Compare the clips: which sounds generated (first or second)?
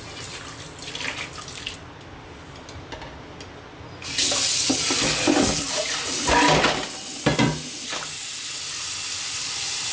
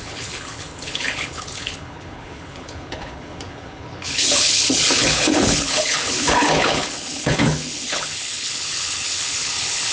second